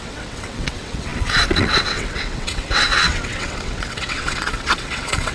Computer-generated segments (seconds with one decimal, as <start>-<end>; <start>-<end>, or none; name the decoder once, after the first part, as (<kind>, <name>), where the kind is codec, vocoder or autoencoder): 0.0-5.3 (vocoder, WaveNeXt)